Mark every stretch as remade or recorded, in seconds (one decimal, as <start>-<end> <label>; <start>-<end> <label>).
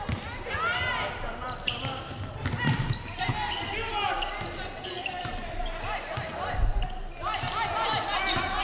0.0-8.6 recorded